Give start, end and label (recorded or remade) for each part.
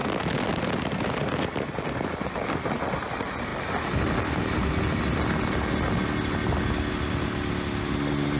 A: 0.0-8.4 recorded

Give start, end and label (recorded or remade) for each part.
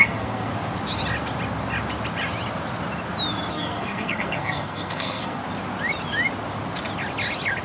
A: 0.0-0.5 remade; 0.5-3.5 recorded; 3.5-5.4 remade; 5.4-7.6 recorded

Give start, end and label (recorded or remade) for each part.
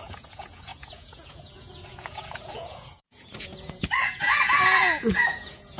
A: 0.0-5.8 remade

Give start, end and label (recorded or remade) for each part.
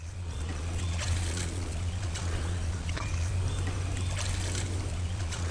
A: 0.0-3.3 remade; 3.3-4.9 recorded; 4.9-5.5 remade